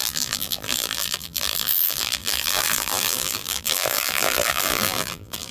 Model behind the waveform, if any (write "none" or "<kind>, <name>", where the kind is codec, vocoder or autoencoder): vocoder, BigVGAN v2